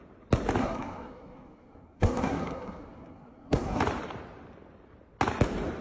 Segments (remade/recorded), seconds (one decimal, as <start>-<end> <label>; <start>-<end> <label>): 0.0-0.6 recorded; 0.6-3.8 remade; 3.8-5.8 recorded